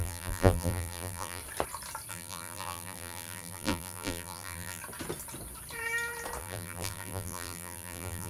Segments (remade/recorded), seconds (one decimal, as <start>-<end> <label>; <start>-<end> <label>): 0.0-1.4 remade; 1.4-2.1 recorded; 2.1-4.8 remade; 4.8-6.4 recorded; 6.4-8.3 remade

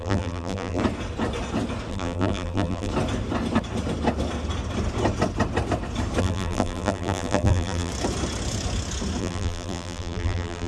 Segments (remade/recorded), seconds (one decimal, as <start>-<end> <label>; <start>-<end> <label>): 0.0-0.8 remade; 0.8-1.9 recorded; 1.9-2.9 remade; 2.9-6.2 recorded; 6.2-7.9 remade; 7.9-9.2 recorded; 9.2-10.7 remade

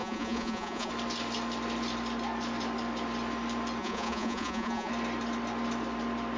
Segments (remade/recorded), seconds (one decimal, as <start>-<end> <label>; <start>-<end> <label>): 0.0-0.9 remade; 0.9-3.8 recorded; 3.8-4.9 remade; 4.9-6.4 recorded

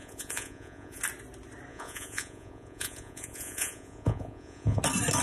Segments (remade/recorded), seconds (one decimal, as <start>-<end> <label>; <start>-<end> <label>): 0.0-1.0 remade; 1.0-1.7 recorded; 1.7-4.8 remade; 4.8-5.2 recorded

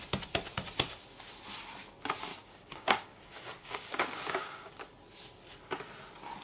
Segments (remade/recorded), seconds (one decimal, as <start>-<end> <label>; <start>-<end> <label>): 0.0-2.3 recorded; 2.3-4.7 remade; 4.7-6.4 recorded

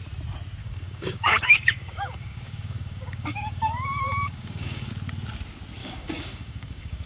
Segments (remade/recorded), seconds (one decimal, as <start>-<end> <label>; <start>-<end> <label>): 0.0-0.6 recorded; 0.6-4.9 remade; 4.9-5.8 recorded; 5.8-7.1 remade

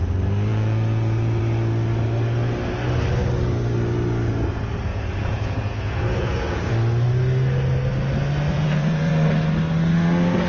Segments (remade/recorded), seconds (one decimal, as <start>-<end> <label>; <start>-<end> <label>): 0.0-0.5 recorded; 0.5-1.4 remade; 1.4-4.9 recorded; 4.9-6.7 remade; 6.7-8.5 recorded; 8.5-9.1 remade; 9.1-10.5 recorded